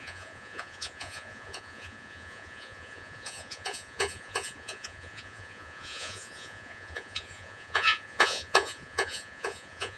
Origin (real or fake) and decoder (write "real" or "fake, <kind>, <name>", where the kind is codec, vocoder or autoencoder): fake, vocoder, Vocos